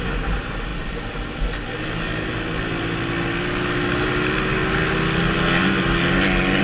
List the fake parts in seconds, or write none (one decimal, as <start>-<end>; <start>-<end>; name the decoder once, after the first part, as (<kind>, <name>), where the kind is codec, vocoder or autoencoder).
none